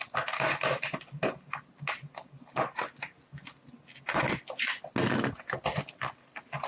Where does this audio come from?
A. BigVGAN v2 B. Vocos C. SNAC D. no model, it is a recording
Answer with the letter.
D